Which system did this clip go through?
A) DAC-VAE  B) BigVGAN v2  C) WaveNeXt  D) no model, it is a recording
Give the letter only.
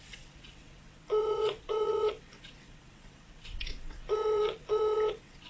C